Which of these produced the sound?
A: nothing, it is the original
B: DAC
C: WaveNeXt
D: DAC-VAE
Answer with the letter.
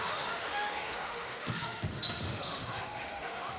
D